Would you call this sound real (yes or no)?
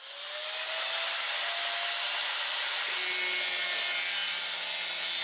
yes